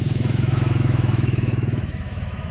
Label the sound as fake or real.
fake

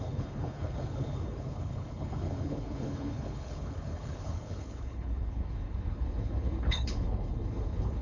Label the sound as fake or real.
fake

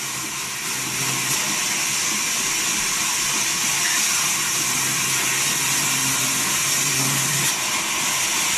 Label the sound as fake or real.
real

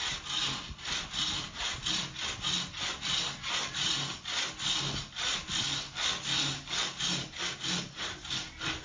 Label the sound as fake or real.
real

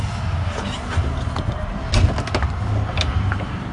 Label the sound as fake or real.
real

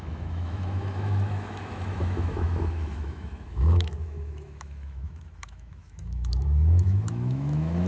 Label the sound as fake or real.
fake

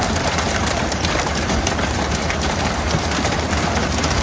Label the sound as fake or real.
fake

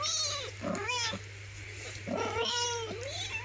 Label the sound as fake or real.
real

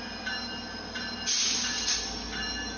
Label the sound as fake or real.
real